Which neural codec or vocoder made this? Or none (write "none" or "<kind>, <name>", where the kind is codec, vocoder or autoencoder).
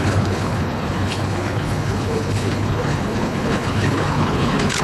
codec, HILCodec